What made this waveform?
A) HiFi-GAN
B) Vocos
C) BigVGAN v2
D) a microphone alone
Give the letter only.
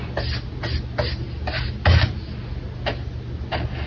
D